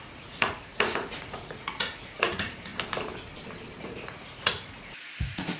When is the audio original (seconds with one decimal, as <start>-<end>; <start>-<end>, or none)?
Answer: 2.7-3.8